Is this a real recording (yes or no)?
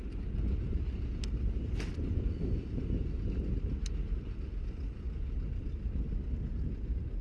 yes